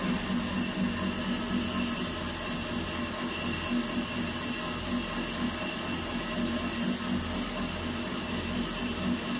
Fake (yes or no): no